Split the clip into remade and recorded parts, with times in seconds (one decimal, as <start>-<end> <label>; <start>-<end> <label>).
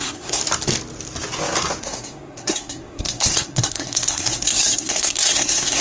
0.0-0.4 remade; 0.4-1.8 recorded; 1.8-5.8 remade